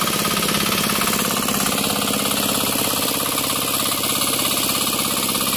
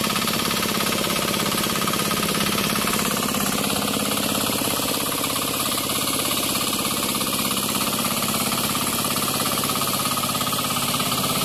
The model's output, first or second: second